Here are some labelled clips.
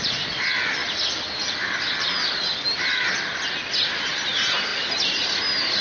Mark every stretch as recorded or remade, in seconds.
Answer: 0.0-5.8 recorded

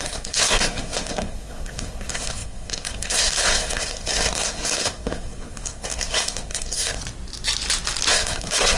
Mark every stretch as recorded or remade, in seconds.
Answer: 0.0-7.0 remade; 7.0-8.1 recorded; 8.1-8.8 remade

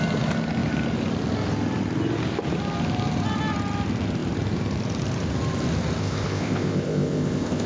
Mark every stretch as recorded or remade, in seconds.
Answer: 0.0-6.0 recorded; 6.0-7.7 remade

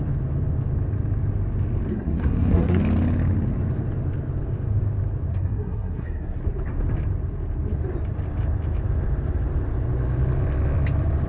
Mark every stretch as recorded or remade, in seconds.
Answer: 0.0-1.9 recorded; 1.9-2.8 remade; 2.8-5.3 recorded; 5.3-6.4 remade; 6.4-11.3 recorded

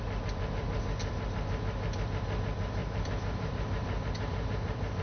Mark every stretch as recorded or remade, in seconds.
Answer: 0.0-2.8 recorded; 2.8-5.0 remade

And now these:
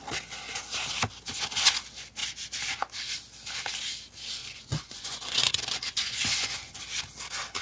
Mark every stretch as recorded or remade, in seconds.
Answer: 0.0-4.4 recorded; 4.4-6.8 remade; 6.8-7.6 recorded